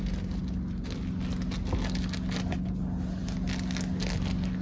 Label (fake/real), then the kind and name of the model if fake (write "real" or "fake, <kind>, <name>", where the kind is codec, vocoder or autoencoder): real